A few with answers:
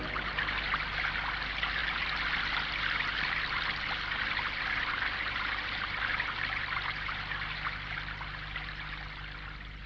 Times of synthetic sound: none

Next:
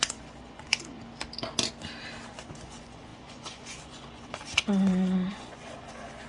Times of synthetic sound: 0.0-1.0 (vocoder, Vocos); 2.3-6.3

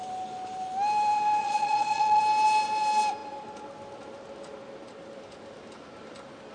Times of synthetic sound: 1.4-2.2 (vocoder, Vocos)

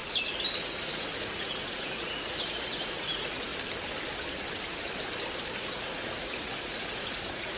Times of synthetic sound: 0.6-3.5 (vocoder, Vocos); 5.5-7.6

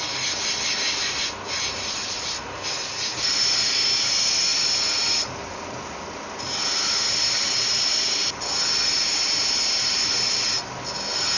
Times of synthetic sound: none

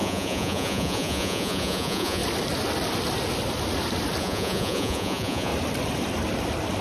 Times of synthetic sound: 0.0-2.2 (vocoder, Vocos); 4.2-5.5

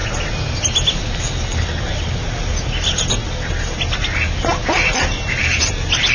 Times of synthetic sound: none